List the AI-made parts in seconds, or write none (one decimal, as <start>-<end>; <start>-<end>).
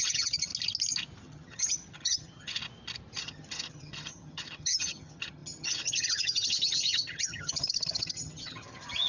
0.0-0.5; 1.2-2.6; 3.2-9.1